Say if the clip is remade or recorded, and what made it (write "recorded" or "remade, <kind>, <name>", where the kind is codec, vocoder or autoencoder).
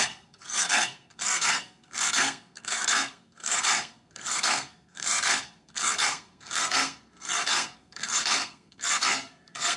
remade, codec, SNAC